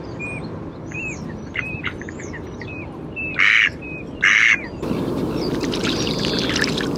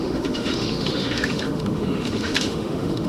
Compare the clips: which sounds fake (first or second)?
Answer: second